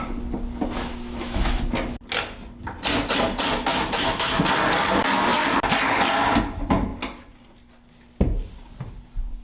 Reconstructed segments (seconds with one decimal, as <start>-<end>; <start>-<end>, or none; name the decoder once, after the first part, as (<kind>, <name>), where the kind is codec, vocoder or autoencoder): 0.9-1.6 (autoencoder, DAC-VAE); 3.7-4.4